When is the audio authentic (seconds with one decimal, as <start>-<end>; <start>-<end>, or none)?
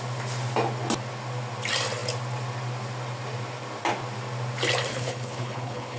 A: 0.0-4.9